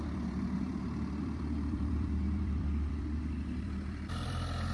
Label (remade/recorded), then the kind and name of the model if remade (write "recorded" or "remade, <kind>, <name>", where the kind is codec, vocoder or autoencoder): remade, vocoder, BigVGAN v2